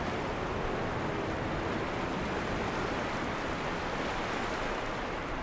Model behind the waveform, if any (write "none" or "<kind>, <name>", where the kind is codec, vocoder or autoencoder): none